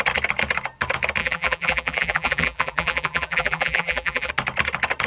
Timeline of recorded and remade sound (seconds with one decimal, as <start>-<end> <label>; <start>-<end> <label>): 0.0-1.2 recorded; 1.2-4.3 remade; 4.3-5.1 recorded